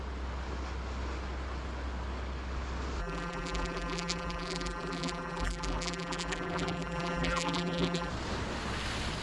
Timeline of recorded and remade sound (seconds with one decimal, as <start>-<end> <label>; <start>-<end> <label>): 0.0-3.0 recorded; 3.0-8.1 remade; 8.1-9.2 recorded